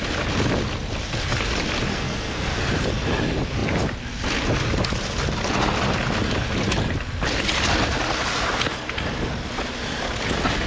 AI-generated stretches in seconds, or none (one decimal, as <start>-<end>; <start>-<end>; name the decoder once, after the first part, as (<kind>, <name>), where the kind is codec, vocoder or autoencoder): 1.9-2.7 (codec, SNAC)